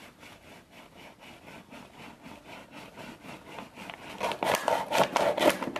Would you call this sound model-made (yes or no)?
no